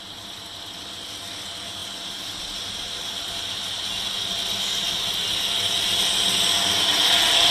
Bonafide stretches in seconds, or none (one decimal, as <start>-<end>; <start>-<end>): 0.0-7.5